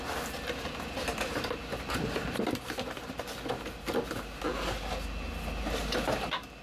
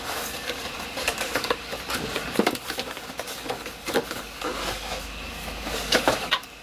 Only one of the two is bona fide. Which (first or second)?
first